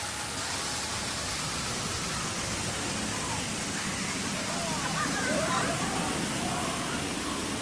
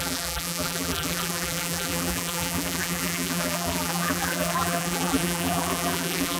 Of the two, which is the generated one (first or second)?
second